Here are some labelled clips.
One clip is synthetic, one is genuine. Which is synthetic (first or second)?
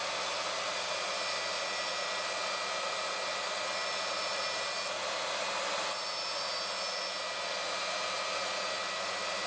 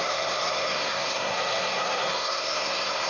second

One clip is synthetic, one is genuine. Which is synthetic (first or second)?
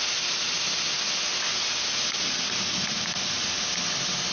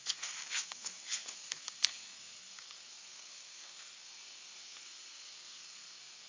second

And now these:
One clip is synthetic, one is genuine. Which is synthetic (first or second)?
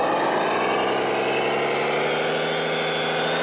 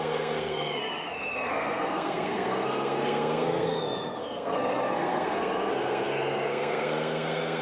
second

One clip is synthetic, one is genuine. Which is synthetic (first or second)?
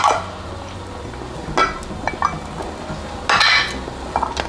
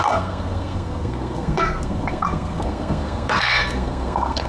second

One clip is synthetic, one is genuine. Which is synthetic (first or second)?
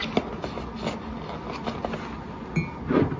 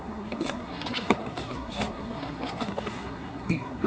second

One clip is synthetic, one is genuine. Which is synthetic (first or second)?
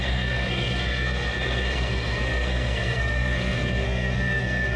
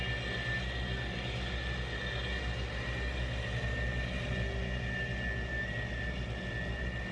first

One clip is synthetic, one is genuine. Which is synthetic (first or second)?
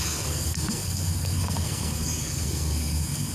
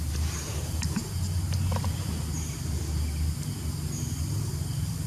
first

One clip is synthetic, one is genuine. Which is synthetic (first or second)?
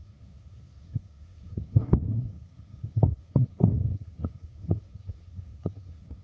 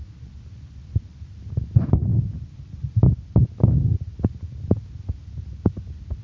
first